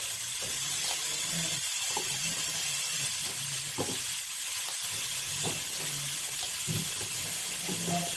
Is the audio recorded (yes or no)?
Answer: yes